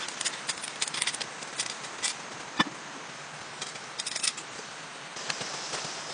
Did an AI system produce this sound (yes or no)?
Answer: no